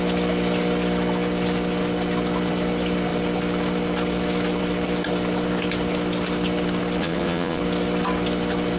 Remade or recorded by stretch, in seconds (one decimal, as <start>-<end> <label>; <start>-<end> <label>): 0.0-7.0 recorded; 7.0-7.6 remade; 7.6-8.8 recorded